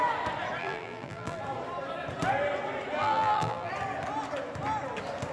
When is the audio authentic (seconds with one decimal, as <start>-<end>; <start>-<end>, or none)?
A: 0.0-0.6; 1.4-3.0; 3.7-5.3